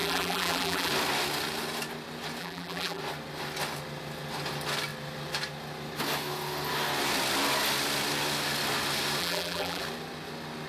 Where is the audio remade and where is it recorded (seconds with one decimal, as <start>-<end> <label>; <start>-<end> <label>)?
0.0-0.9 remade; 0.9-2.4 recorded; 2.4-3.0 remade; 3.0-9.2 recorded; 9.2-9.8 remade; 9.8-10.7 recorded